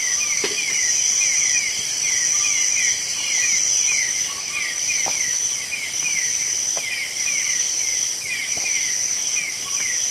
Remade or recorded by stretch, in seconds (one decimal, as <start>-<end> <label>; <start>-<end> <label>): 0.0-10.1 recorded